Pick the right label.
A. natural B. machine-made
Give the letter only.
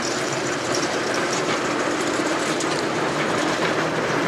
B